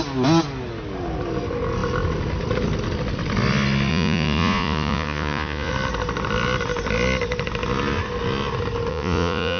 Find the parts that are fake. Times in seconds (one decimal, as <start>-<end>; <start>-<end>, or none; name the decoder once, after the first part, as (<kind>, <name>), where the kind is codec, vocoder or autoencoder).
3.9-5.7 (vocoder, Vocos); 8.9-9.6